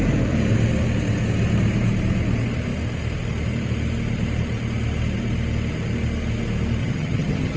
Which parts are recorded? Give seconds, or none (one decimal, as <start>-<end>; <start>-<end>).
0.0-6.8

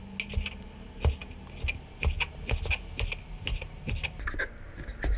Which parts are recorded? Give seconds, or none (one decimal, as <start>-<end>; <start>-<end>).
0.0-5.2

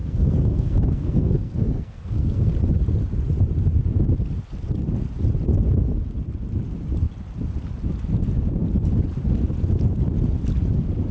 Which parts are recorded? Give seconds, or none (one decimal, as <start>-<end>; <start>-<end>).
2.5-11.1

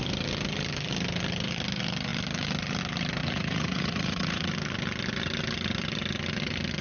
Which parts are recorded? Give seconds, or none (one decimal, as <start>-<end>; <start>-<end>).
0.0-3.2; 4.5-6.8

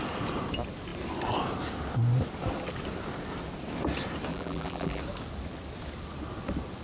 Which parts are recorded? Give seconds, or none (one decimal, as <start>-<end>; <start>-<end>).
0.0-4.3; 5.0-6.8

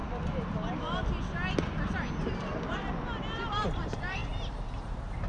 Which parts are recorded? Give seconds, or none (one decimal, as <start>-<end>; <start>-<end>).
0.0-3.2